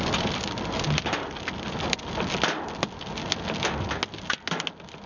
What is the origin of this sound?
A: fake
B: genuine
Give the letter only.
B